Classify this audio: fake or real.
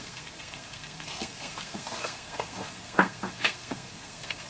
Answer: fake